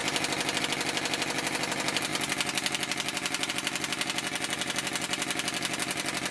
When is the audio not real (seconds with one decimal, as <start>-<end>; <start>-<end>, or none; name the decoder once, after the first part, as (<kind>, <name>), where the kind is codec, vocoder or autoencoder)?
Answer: none